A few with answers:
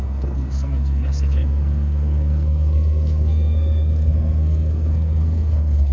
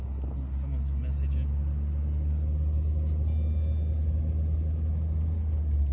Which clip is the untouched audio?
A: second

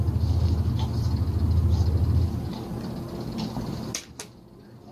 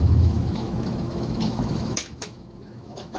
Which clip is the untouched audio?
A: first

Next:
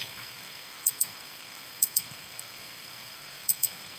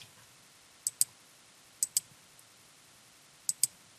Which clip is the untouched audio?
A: second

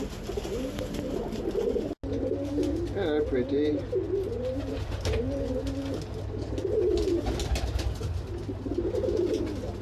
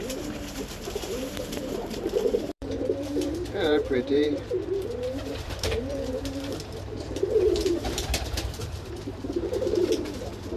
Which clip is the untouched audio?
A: first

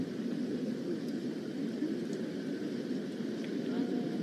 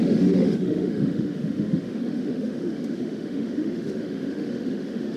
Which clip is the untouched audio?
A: first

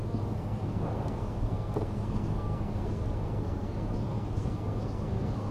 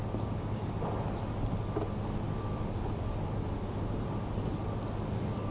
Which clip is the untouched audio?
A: second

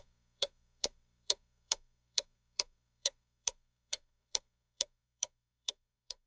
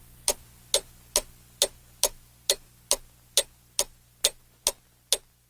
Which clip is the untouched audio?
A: second